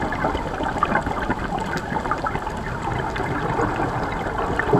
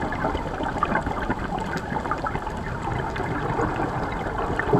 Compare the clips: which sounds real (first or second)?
first